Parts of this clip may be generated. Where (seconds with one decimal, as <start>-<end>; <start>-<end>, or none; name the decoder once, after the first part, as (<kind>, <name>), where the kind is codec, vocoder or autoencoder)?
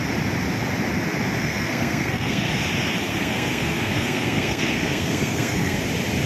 1.4-2.5 (codec, SNAC); 3.1-5.8